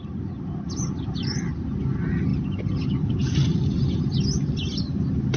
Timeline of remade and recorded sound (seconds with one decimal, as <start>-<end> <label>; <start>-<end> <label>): 0.0-2.3 recorded; 2.3-4.0 remade; 4.0-5.4 recorded